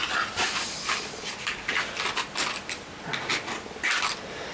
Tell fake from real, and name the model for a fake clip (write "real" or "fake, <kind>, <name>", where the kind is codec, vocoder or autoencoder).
real